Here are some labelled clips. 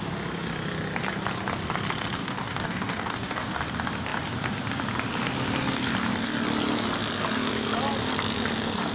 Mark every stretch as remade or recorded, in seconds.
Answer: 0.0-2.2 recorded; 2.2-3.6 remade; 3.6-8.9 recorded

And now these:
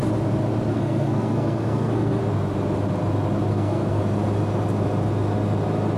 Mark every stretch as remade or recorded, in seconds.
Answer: 0.0-0.7 recorded; 0.7-2.2 remade; 2.2-3.5 recorded; 3.5-4.0 remade; 4.0-6.0 recorded

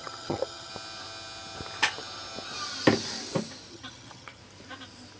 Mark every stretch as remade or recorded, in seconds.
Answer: 0.0-0.7 remade; 0.7-3.7 recorded; 3.7-4.4 remade; 4.4-5.2 recorded